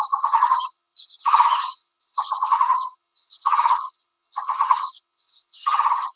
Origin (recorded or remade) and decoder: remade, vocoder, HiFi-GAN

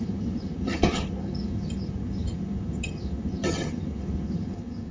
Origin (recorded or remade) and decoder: remade, vocoder, HiFi-GAN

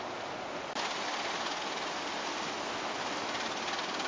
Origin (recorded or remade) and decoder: recorded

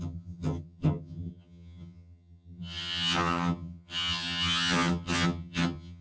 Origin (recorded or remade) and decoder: remade, vocoder, HiFi-GAN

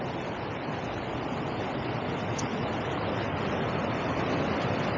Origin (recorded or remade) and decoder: recorded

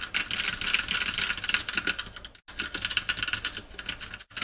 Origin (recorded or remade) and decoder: recorded